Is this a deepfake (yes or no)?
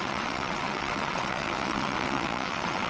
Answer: yes